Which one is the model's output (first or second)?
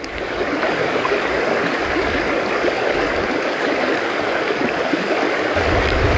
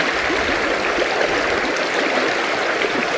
first